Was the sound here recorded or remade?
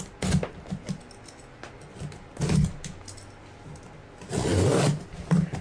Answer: recorded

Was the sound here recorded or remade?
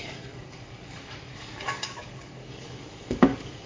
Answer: remade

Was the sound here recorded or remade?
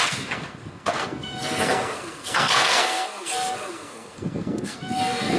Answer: remade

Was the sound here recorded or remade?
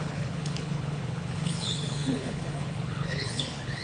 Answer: remade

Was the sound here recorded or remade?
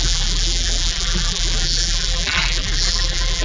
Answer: remade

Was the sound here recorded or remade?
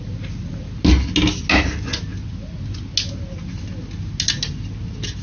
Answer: recorded